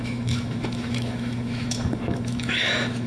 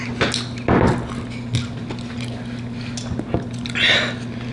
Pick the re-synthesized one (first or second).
first